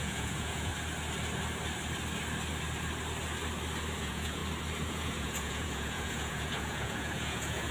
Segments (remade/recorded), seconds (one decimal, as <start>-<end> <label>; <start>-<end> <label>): 0.0-0.7 remade; 0.7-4.0 recorded; 4.0-4.4 remade; 4.4-4.9 recorded; 4.9-7.7 remade